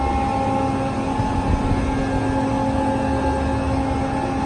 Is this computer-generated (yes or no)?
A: no